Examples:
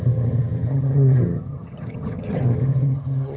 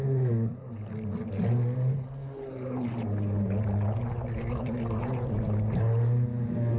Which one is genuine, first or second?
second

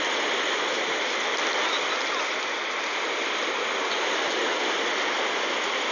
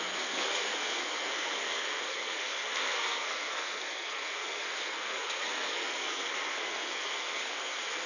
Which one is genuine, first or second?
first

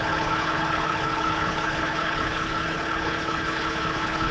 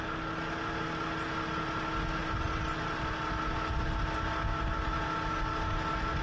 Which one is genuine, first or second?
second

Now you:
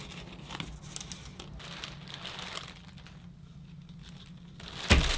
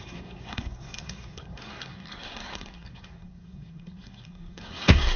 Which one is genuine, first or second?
first